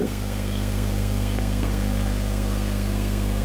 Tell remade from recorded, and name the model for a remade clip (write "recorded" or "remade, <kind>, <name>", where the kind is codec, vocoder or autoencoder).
remade, codec, SNAC